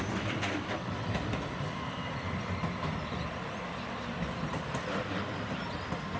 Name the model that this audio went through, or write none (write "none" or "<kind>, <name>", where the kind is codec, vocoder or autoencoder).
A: none